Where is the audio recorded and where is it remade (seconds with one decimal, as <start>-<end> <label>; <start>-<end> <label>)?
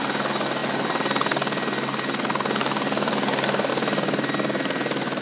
0.0-5.2 recorded